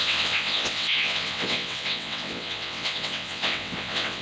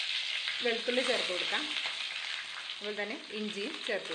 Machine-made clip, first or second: first